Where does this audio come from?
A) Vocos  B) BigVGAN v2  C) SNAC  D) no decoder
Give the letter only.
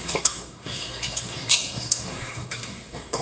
C